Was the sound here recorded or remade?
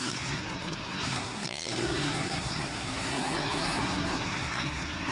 remade